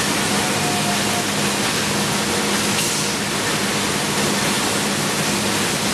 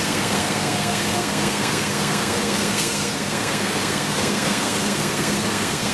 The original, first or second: first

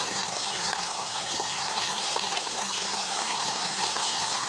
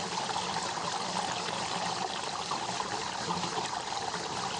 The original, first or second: second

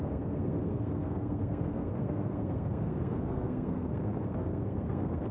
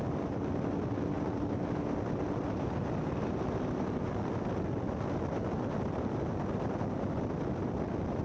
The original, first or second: second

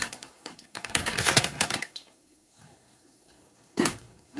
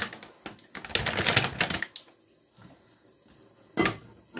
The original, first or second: second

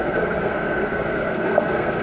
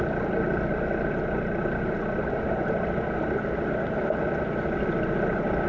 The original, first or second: second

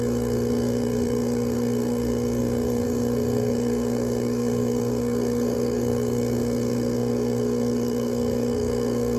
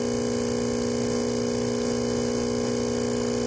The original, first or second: second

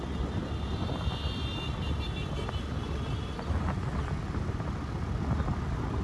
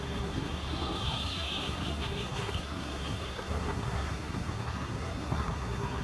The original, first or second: first